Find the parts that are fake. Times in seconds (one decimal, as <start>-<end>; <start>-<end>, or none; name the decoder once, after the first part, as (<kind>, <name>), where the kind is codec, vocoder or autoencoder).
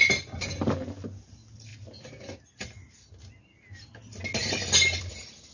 none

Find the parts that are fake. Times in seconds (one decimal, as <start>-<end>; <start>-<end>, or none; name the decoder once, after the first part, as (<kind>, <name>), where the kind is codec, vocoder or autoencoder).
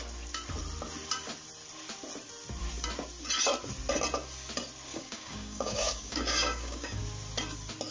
4.9-7.0 (codec, DAC)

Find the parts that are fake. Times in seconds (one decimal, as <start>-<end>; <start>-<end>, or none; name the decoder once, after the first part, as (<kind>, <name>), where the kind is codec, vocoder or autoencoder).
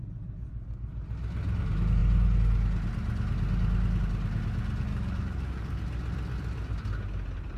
4.9-5.8 (codec, DAC)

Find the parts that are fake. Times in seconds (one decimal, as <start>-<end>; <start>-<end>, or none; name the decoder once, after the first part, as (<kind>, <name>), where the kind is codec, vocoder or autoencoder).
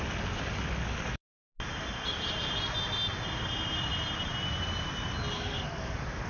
0.0-1.5 (codec, DAC); 5.3-6.3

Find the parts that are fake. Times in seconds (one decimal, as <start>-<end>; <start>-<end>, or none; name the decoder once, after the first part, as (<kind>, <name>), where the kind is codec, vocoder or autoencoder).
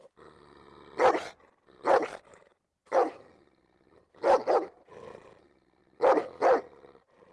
none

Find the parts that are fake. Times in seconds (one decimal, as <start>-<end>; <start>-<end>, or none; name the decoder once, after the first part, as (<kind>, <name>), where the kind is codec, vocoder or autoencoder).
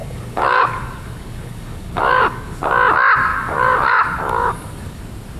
0.0-2.6 (codec, DAC); 3.3-5.0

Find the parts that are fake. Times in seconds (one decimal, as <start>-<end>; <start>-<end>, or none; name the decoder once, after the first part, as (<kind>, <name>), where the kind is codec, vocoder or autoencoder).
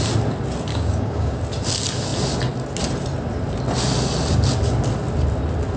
0.7-1.4 (codec, DAC)